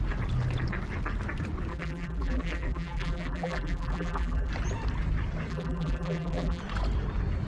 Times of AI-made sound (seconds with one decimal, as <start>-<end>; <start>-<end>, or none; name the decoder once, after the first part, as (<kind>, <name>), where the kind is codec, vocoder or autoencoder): 1.7-4.5 (vocoder, BigVGAN v2); 5.5-6.6

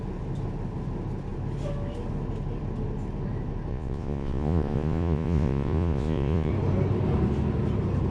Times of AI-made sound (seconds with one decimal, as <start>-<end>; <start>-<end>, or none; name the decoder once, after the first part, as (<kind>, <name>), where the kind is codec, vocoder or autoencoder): 3.7-6.5 (vocoder, Vocos)

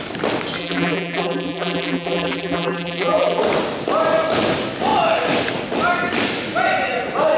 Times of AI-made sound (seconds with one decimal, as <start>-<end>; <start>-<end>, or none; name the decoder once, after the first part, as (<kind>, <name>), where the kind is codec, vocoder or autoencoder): 0.6-3.4 (vocoder, BigVGAN v2)

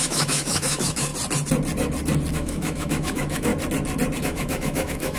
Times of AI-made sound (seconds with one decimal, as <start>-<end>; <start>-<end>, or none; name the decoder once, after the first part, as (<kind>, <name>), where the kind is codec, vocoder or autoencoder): 0.0-1.1 (autoencoder, DAC-VAE); 2.3-3.5; 4.2-5.2

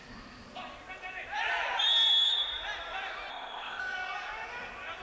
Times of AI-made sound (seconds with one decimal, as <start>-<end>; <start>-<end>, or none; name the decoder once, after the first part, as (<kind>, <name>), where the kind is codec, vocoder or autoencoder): 3.3-3.8 (codec, ZipCodec)

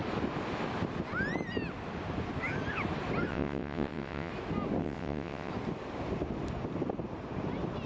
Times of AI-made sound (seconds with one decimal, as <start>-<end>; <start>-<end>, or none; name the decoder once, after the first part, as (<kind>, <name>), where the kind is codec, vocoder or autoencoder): 3.3-4.3 (vocoder, WaveNeXt); 4.8-5.5

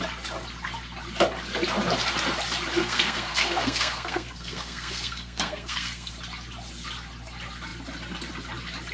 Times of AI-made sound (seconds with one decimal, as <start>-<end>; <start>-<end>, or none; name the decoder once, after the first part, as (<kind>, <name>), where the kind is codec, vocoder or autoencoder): 2.8-6.1 (codec, SNAC)

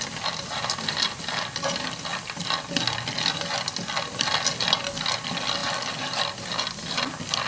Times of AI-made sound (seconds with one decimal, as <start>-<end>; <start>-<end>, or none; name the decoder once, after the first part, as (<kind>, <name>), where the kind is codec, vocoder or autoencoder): none